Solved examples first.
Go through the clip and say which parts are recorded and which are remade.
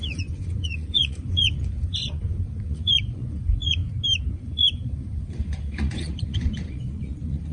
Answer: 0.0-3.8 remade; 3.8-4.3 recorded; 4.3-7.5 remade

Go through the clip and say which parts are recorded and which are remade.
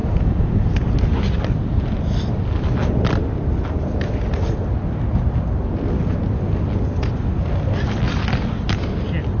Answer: 0.0-0.5 remade; 0.5-9.4 recorded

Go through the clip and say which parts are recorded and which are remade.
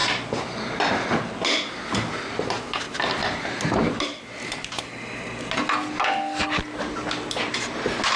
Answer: 0.0-8.2 recorded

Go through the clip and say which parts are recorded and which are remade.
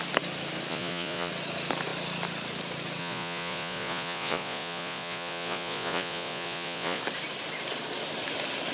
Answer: 0.0-0.7 recorded; 0.7-1.3 remade; 1.3-3.0 recorded; 3.0-7.0 remade; 7.0-8.7 recorded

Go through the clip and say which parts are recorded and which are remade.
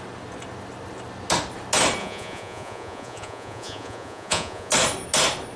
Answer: 0.0-2.0 recorded; 2.0-4.7 remade; 4.7-5.6 recorded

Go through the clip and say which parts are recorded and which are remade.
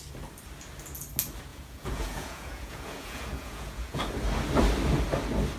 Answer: 0.0-1.5 recorded; 1.5-4.0 remade; 4.0-5.6 recorded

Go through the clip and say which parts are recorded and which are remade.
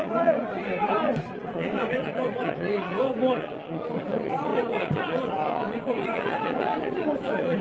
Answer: 0.0-7.6 remade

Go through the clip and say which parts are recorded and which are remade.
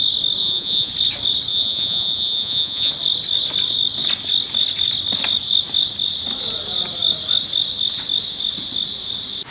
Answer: 0.0-0.4 recorded; 0.4-0.9 remade; 0.9-1.5 recorded; 1.5-2.9 remade; 2.9-9.5 recorded